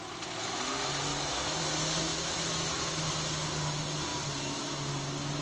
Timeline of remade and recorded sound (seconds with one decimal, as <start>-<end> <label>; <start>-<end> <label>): 0.0-1.1 recorded; 1.1-1.6 remade; 1.6-2.1 recorded; 2.1-3.1 remade; 3.1-5.4 recorded